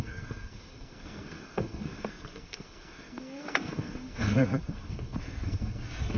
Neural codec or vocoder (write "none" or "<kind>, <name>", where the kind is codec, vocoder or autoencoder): codec, SNAC